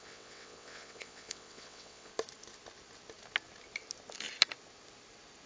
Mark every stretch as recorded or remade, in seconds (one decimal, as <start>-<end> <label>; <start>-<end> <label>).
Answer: 0.0-2.1 remade; 2.1-5.5 recorded